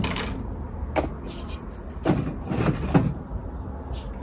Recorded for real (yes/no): yes